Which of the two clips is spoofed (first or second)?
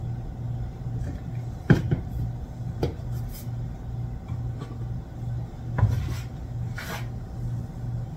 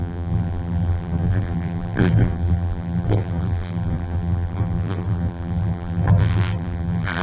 second